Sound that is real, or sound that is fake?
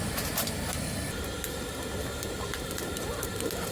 real